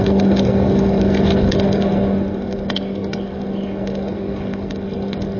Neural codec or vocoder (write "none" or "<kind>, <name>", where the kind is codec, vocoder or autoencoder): codec, SNAC